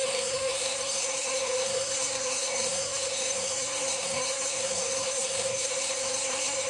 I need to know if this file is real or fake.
fake